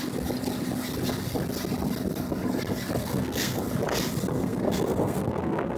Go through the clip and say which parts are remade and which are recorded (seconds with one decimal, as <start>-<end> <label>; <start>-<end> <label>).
0.0-3.0 recorded; 3.0-3.6 remade; 3.6-4.3 recorded; 4.3-5.8 remade